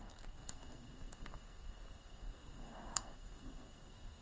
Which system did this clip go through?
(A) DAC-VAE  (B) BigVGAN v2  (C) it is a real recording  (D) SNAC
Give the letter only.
D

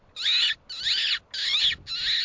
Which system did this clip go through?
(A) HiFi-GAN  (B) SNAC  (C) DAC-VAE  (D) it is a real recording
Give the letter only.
D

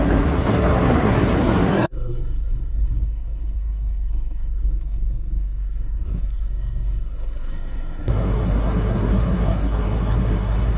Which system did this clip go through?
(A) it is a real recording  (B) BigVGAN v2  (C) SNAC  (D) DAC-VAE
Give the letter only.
C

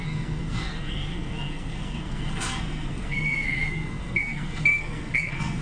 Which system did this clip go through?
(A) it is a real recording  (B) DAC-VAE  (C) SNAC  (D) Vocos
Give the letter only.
C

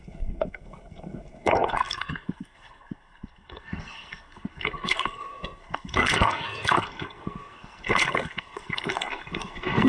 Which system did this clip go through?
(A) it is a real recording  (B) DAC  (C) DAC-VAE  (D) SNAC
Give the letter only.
D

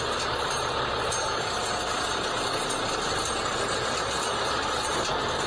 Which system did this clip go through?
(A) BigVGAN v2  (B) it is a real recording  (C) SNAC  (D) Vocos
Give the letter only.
B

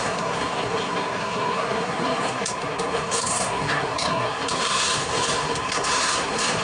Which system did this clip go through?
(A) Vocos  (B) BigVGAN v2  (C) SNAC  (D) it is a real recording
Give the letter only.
C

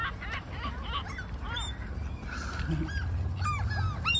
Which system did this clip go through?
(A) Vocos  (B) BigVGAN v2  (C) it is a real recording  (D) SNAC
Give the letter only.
C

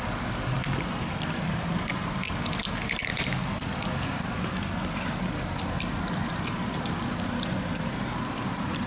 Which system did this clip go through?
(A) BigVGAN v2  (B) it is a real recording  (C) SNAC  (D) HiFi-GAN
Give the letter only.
B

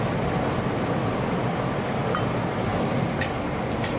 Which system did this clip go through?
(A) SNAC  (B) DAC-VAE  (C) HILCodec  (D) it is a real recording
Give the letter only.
D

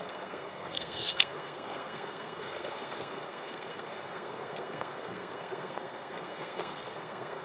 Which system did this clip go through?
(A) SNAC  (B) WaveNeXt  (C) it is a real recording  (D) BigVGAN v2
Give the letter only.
A